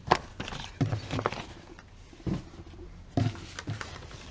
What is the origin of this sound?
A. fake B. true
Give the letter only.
A